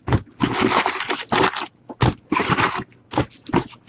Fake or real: real